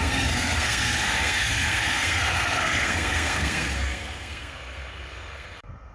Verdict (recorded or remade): remade